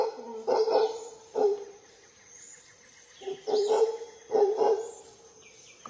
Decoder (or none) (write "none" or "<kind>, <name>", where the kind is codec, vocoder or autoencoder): none